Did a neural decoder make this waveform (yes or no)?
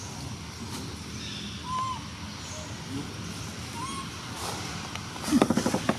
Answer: no